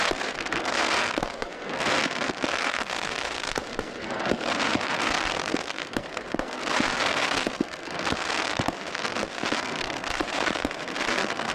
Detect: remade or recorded remade